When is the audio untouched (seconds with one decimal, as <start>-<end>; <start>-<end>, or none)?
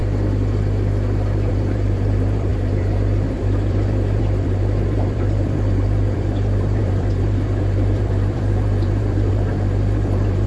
0.0-1.5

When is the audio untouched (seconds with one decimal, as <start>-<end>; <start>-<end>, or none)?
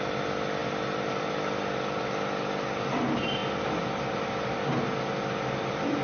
3.4-5.0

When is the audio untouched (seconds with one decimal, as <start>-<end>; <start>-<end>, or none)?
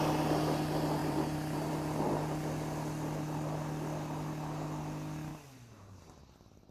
0.0-1.0; 1.7-5.3; 6.0-6.7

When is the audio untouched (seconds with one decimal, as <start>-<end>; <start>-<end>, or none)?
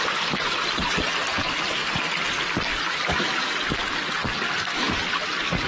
0.0-5.7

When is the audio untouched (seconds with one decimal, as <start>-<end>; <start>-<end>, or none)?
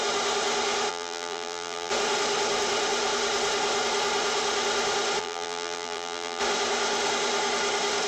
0.0-0.9; 1.9-5.2; 6.4-8.1